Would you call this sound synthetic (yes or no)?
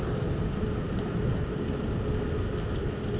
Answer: no